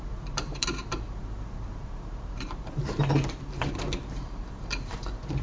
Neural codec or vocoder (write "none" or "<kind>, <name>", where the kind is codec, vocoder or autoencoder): vocoder, BigVGAN v2